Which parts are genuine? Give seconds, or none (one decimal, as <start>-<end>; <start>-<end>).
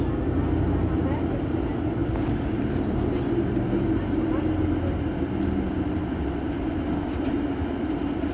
0.0-2.0; 6.9-8.3